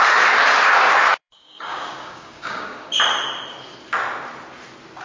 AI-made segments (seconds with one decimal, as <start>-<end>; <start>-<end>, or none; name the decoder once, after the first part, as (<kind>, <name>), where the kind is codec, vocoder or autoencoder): 1.1-2.9 (codec, DAC)